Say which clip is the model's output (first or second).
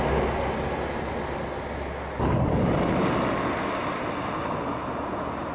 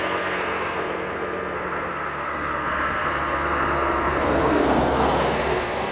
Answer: second